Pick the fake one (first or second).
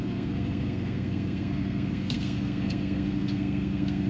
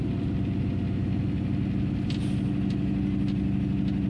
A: first